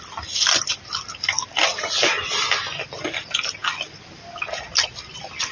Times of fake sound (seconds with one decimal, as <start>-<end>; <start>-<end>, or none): 0.0-1.7; 3.0-3.6; 5.1-5.5